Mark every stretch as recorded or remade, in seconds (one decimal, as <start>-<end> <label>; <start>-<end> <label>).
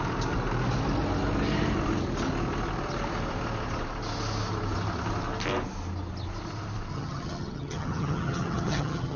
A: 0.0-6.9 recorded; 6.9-9.2 remade